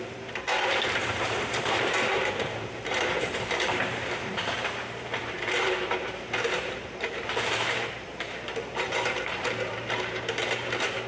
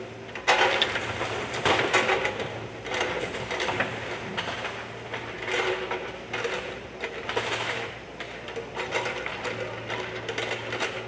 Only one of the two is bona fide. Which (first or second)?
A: second